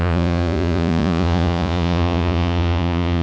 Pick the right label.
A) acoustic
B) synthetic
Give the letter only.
B